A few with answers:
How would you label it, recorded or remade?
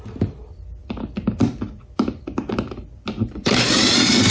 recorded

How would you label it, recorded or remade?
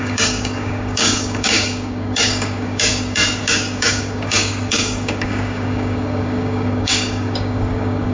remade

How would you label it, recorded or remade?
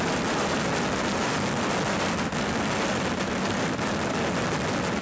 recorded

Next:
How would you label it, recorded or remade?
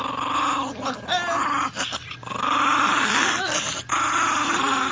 recorded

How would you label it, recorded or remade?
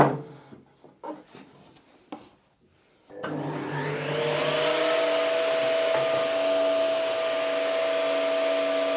recorded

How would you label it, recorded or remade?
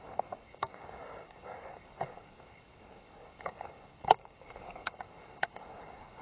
remade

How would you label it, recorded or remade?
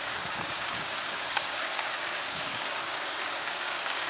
remade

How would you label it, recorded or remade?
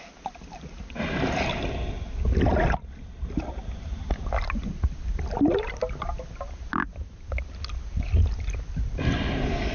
recorded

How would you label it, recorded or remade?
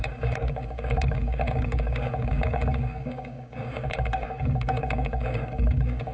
remade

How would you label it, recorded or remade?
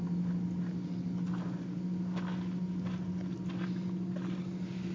recorded